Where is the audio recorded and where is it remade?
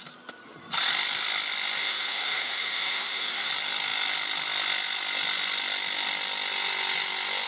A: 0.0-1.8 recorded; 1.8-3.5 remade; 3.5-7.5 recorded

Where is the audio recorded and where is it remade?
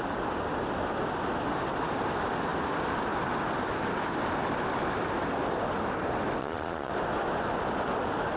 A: 0.0-6.4 recorded; 6.4-6.9 remade; 6.9-8.4 recorded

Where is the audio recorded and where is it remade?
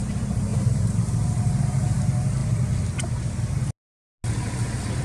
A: 0.0-0.5 remade; 0.5-1.3 recorded; 1.3-2.4 remade; 2.4-3.2 recorded; 3.2-3.6 remade; 3.6-5.0 recorded